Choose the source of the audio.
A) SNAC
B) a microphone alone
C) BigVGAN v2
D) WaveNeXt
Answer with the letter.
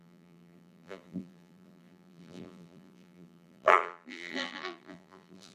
C